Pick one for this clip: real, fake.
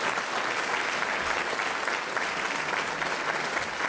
real